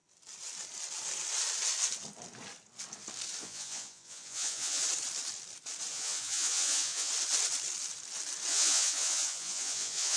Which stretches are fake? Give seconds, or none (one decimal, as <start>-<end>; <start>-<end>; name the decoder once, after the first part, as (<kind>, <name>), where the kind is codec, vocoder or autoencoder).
3.4-4.8 (vocoder, Vocos); 5.9-7.1; 8.5-10.2